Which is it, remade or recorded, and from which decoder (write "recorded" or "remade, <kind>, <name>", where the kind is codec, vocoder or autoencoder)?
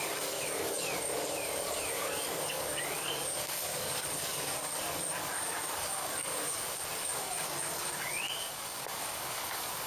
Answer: remade, codec, DAC